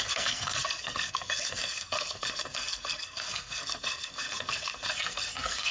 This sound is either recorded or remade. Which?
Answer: remade